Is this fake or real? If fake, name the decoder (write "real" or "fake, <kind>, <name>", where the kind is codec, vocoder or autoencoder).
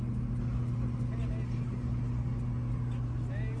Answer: real